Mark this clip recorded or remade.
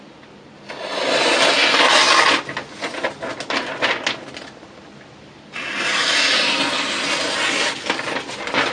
recorded